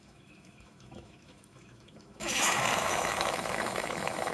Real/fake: fake